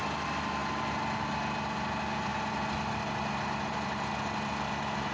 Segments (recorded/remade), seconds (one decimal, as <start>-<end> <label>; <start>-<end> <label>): 0.0-5.1 recorded